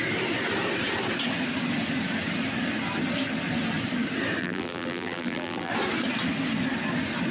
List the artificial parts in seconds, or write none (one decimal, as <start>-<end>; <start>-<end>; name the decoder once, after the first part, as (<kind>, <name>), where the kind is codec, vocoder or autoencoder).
4.4-5.7 (vocoder, BigVGAN v2)